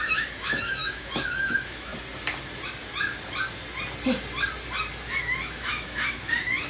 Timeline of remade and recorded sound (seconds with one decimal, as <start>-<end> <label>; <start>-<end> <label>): 0.0-1.9 remade; 1.9-4.9 recorded; 4.9-6.7 remade